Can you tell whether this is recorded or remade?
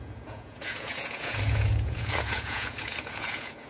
remade